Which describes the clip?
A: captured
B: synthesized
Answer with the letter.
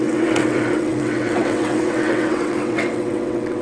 B